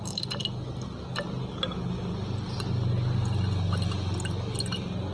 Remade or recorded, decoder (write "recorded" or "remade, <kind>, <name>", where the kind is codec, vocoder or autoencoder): recorded